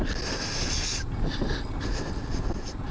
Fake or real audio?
real